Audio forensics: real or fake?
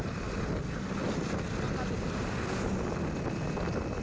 real